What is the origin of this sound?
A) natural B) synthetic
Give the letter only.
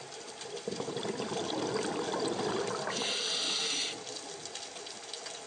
A